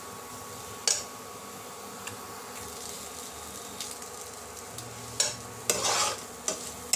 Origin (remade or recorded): recorded